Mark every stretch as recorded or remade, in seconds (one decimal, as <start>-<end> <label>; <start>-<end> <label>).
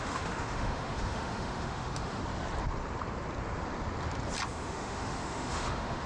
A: 0.0-2.2 remade; 2.2-4.5 recorded; 4.5-6.1 remade